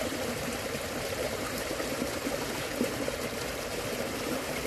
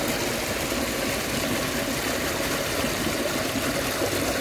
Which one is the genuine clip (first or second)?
second